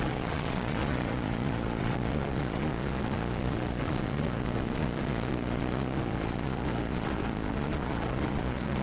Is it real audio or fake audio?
fake